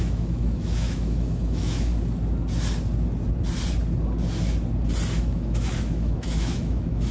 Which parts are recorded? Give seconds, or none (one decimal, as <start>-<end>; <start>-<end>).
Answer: 1.9-5.2

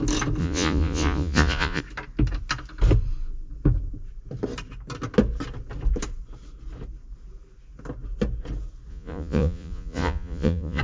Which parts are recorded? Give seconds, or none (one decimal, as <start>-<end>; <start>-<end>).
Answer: 0.0-0.4; 1.8-8.9

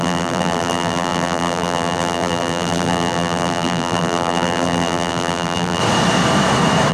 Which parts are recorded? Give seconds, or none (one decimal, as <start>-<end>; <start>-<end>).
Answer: 5.8-6.9

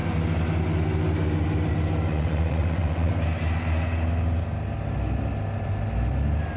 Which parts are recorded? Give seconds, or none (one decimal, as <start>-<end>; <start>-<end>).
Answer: 0.0-2.1; 3.1-6.6

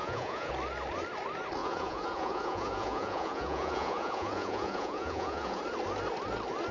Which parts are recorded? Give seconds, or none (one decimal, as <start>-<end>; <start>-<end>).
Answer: 0.5-1.6; 5.6-6.7

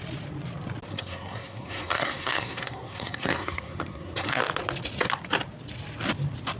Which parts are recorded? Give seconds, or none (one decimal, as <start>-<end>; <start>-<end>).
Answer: 0.0-0.9; 4.4-6.6